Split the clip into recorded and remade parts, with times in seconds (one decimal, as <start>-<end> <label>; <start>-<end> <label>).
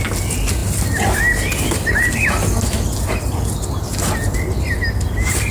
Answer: 0.0-5.5 recorded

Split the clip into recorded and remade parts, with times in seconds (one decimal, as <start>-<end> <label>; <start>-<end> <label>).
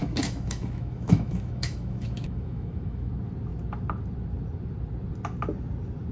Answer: 0.0-3.1 remade; 3.1-6.1 recorded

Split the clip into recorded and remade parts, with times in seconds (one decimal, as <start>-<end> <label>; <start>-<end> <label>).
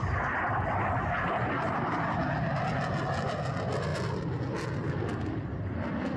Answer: 0.0-6.2 recorded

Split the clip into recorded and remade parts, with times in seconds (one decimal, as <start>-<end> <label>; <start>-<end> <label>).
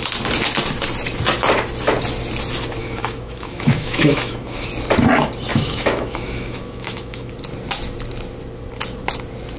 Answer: 0.0-2.8 recorded; 2.8-4.7 remade; 4.7-5.5 recorded; 5.5-7.3 remade; 7.3-9.6 recorded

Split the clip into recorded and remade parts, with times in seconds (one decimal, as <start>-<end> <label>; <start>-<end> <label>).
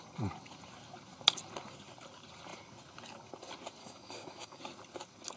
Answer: 0.0-3.8 recorded; 3.8-4.6 remade; 4.6-5.4 recorded